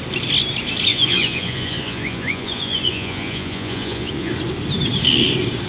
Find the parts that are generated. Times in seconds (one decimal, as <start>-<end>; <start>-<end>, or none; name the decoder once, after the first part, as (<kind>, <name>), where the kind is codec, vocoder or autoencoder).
0.9-4.3 (vocoder, Vocos)